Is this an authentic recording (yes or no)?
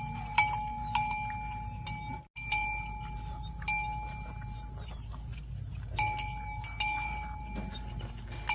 yes